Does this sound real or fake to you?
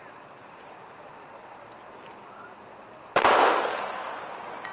real